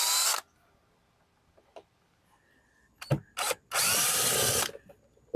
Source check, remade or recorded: recorded